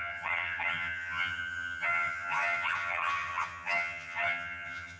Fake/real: fake